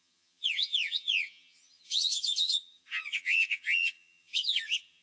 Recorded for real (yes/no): no